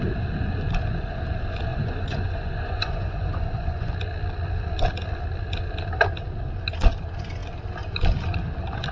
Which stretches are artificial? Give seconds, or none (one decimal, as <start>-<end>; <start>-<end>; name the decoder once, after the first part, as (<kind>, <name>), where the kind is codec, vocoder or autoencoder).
1.7-3.9 (vocoder, Vocos)